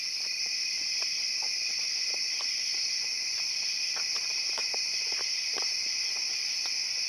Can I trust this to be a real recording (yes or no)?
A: no